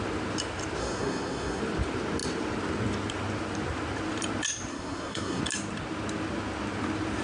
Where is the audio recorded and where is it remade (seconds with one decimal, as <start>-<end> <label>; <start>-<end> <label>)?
0.0-0.8 recorded; 0.8-1.6 remade; 1.6-4.7 recorded; 4.7-5.4 remade; 5.4-7.2 recorded